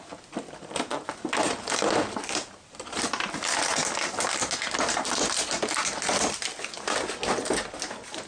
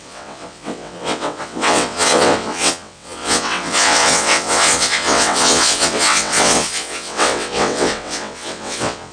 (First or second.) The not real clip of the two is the second